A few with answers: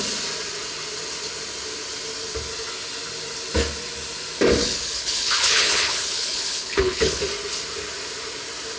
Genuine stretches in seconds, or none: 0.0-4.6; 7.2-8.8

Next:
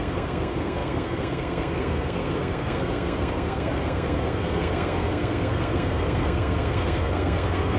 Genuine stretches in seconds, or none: none

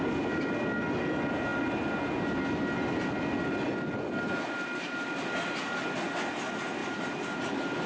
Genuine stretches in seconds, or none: 0.0-6.8; 7.5-7.9

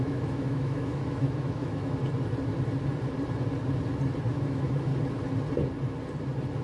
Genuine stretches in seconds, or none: 2.0-4.3; 4.9-6.6

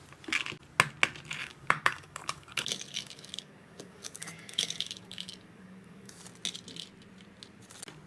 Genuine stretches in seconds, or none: 0.0-1.4; 6.2-8.1

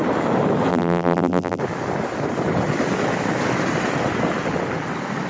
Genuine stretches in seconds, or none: 0.0-0.7; 1.6-5.3